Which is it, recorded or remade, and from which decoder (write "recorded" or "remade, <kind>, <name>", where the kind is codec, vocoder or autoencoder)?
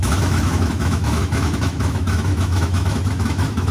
remade, autoencoder, DAC-VAE